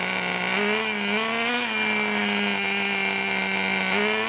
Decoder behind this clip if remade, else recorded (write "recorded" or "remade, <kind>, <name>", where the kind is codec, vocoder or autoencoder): recorded